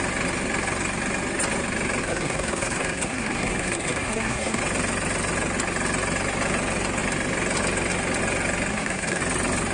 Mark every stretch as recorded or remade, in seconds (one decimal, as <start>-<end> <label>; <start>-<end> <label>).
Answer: 0.0-2.0 recorded; 2.0-4.6 remade; 4.6-8.7 recorded; 8.7-9.2 remade; 9.2-9.7 recorded